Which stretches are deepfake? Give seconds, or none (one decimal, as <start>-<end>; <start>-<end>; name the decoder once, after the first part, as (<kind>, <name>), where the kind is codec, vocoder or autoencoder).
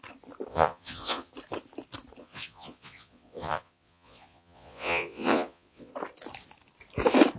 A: 0.5-1.3 (vocoder, Vocos); 2.2-5.9